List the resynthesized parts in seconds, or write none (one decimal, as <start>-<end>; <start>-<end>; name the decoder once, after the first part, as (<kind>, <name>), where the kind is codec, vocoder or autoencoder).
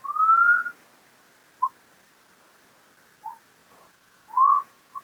3.6-5.0 (vocoder, Vocos)